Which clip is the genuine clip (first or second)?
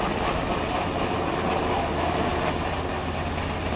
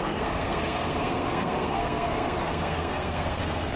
first